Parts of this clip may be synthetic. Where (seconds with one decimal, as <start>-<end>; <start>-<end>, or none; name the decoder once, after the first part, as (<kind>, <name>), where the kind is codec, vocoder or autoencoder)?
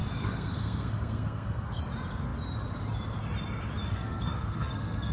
0.0-1.8 (codec, SNAC); 3.9-5.1